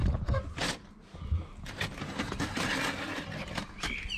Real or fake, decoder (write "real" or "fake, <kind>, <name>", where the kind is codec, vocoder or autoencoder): real